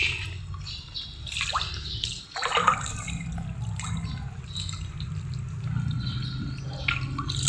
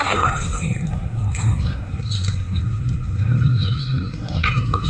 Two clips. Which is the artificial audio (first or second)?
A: second